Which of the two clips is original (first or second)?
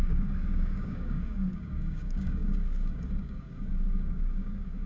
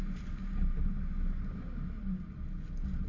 second